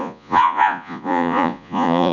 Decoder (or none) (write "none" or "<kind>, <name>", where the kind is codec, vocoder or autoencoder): vocoder, Vocos